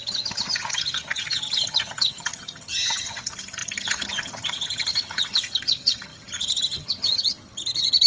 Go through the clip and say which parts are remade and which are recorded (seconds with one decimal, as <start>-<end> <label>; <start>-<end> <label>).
0.0-8.1 remade